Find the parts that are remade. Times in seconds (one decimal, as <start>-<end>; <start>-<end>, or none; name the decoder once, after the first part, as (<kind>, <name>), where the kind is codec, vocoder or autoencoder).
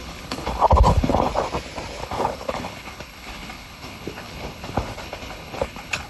0.0-1.3 (codec, HILCodec); 2.0-6.1